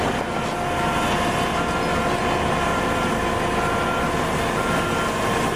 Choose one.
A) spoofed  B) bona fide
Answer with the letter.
B